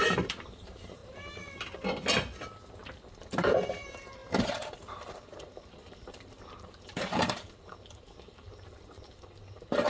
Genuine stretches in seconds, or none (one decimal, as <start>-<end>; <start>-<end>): 1.0-3.1